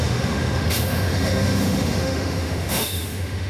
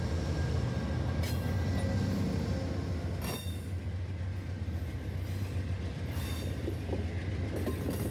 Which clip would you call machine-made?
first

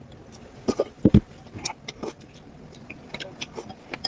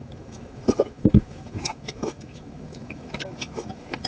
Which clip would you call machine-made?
second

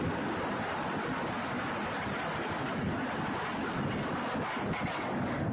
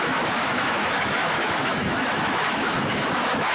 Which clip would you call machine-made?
second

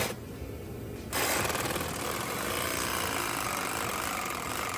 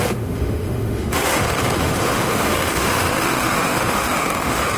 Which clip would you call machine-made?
second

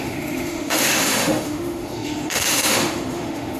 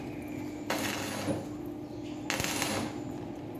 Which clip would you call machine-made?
first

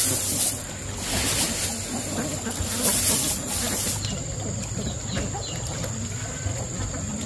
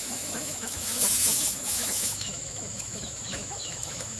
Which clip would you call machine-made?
second